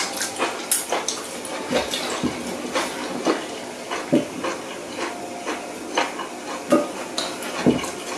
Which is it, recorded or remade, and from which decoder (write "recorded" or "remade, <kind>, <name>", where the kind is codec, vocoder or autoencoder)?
recorded